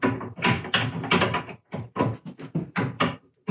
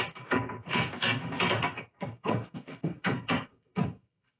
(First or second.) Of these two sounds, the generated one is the second